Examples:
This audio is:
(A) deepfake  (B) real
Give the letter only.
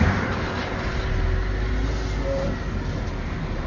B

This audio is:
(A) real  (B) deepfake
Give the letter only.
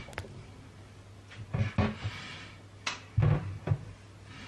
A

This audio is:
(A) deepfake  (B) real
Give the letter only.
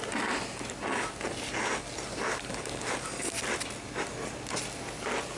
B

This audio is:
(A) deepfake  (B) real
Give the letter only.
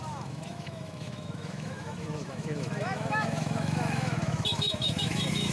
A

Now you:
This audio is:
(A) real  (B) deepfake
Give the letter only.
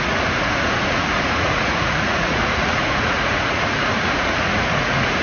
B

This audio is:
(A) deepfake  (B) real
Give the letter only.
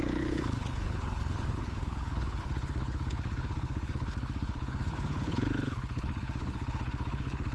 A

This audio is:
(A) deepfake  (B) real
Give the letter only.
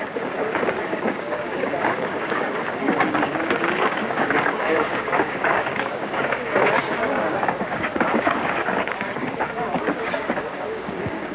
A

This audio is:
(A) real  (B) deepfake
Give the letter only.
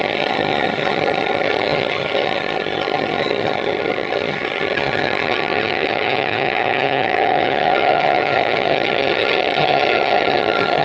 B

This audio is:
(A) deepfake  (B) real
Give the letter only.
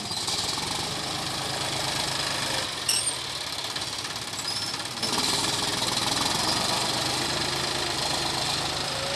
B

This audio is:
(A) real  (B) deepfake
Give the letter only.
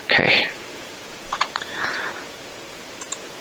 B